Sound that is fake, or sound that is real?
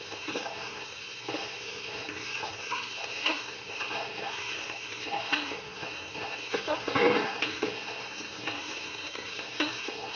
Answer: fake